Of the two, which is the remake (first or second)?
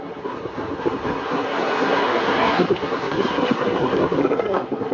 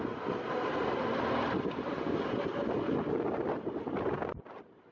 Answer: first